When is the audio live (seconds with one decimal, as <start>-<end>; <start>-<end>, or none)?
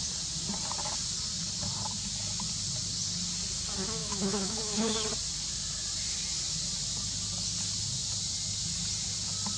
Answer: 0.0-4.0; 4.9-9.6